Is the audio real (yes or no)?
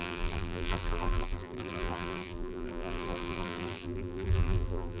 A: no